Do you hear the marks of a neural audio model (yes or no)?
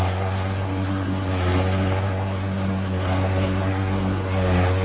yes